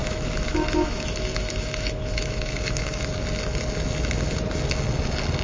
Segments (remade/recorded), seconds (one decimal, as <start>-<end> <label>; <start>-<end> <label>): 0.0-3.1 remade; 3.1-5.4 recorded